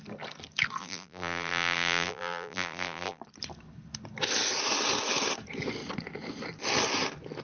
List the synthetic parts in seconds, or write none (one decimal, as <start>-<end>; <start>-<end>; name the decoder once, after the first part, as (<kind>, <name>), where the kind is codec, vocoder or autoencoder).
0.8-3.2 (vocoder, BigVGAN v2)